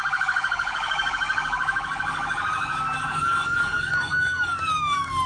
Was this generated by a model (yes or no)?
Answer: yes